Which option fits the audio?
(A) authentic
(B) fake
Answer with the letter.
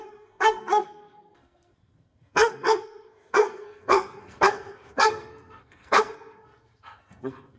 B